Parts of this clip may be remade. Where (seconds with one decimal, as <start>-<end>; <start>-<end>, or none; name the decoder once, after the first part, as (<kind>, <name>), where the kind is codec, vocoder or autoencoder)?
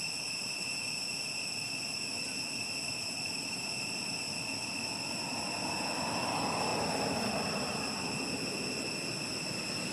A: none